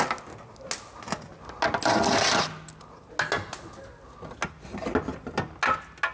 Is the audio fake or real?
real